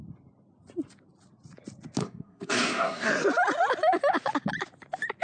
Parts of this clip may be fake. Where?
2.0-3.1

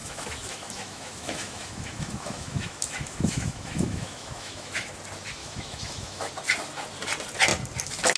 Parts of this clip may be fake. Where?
0.0-4.9; 5.4-6.3

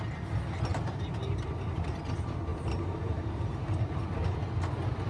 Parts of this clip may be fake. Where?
0.7-2.0; 2.5-4.0

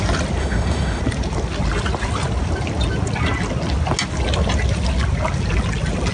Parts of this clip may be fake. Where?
0.4-1.0

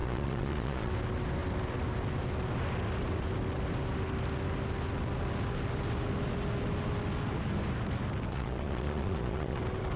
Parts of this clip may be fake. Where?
0.0-0.9; 8.3-9.6

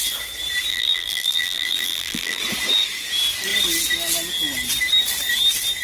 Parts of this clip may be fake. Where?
0.7-2.4